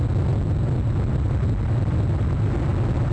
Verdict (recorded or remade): recorded